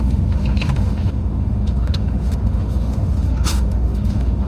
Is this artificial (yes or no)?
yes